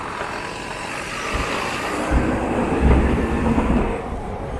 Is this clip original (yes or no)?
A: yes